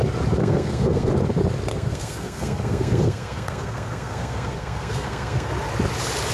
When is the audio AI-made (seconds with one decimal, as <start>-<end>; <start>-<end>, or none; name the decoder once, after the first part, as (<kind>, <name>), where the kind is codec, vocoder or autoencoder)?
0.4-1.1 (codec, SNAC); 1.7-5.5